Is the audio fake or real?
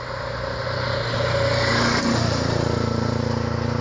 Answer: real